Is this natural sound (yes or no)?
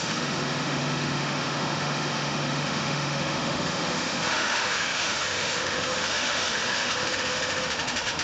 no